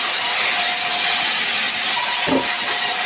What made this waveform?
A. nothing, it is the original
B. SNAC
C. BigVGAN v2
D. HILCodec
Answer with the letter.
A